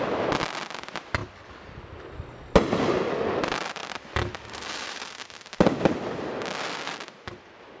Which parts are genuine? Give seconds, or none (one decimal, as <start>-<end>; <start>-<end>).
0.0-7.8